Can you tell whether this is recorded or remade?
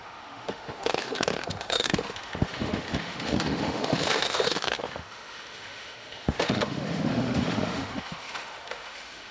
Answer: remade